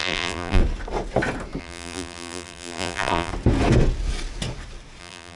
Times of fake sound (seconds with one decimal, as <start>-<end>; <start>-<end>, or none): 0.0-0.6; 1.6-3.3; 5.0-5.4